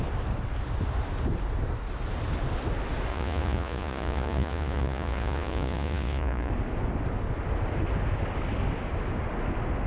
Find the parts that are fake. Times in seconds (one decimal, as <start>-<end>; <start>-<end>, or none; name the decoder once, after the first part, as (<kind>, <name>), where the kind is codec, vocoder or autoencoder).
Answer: 3.1-6.5 (vocoder, Vocos)